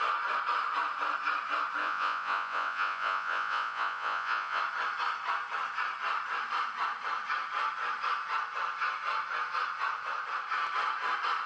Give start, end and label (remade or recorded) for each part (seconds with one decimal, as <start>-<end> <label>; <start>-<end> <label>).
0.0-1.8 recorded; 1.8-4.6 remade; 4.6-11.5 recorded